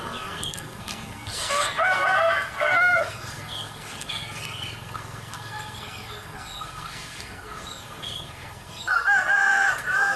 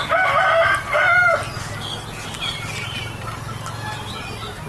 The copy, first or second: first